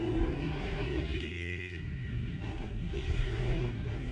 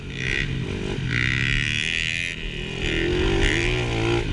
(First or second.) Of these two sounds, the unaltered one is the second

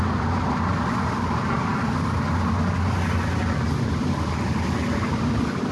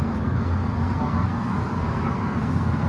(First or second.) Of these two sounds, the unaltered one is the first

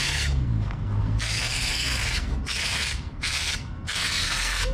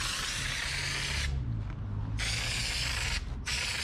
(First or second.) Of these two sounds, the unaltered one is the second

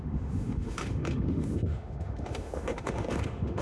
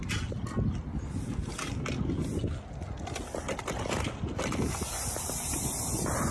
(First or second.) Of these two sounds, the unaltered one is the second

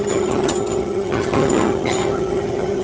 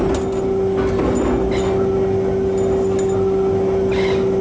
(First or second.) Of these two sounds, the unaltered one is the second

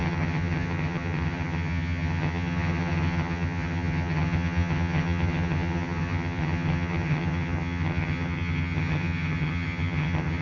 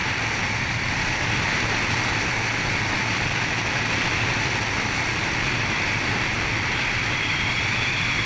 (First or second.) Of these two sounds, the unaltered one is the second